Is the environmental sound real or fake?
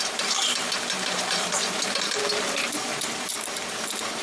fake